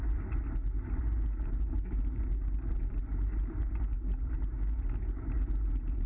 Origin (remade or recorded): recorded